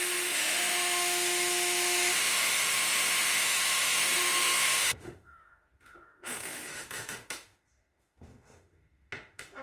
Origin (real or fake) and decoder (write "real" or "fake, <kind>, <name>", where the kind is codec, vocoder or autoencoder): fake, autoencoder, DAC-VAE